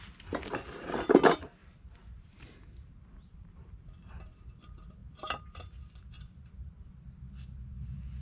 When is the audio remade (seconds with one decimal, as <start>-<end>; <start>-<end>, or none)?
1.6-3.7